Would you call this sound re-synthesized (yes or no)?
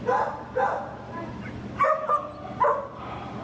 no